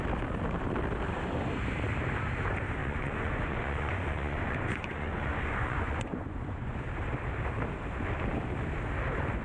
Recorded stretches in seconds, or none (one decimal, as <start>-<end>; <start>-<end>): 0.0-2.8; 6.7-9.4